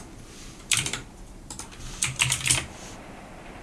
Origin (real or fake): fake